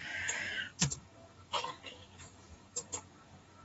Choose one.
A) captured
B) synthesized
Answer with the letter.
B